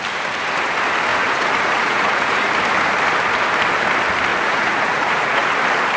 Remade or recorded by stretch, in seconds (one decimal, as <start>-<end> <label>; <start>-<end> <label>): 0.0-1.1 recorded; 1.1-2.5 remade; 2.5-4.3 recorded; 4.3-5.5 remade; 5.5-6.0 recorded